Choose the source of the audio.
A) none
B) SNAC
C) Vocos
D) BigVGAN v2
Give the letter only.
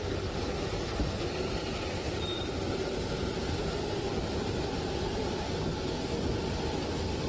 A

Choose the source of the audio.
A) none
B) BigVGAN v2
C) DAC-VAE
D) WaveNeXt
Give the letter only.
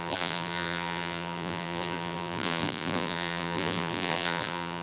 B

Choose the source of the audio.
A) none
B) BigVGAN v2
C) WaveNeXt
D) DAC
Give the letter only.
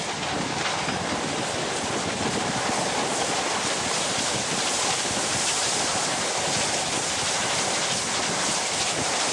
A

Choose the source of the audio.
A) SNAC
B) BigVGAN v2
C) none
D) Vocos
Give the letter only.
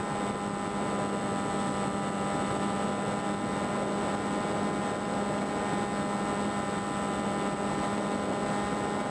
C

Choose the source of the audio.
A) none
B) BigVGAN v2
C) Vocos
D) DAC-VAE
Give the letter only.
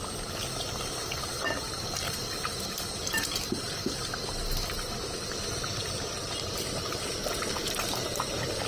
B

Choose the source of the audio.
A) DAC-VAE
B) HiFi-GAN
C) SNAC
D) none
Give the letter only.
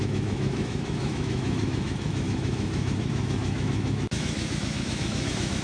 A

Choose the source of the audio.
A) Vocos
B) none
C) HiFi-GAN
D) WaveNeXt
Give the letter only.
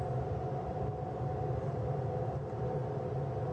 B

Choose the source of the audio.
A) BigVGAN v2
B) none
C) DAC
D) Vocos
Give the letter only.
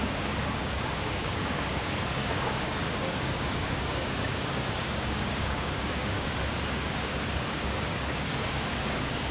C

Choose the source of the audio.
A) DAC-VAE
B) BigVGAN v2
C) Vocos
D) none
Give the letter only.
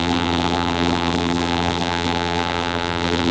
B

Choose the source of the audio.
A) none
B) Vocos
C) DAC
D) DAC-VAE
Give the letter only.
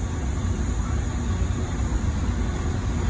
A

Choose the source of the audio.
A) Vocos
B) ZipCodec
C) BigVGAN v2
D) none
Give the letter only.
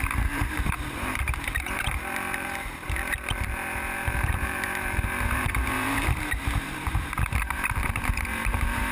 C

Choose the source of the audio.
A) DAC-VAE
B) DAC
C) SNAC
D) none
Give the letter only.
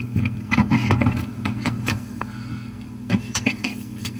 C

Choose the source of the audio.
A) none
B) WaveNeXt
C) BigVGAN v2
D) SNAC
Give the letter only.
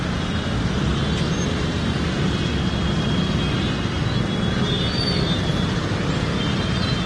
A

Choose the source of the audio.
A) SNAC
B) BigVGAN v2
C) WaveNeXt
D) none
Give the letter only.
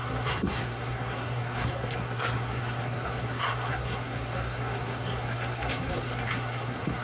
A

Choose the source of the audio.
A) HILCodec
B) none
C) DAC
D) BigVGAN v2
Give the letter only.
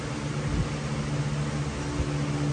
B